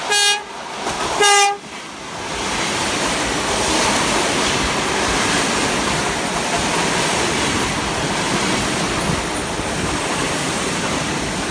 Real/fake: real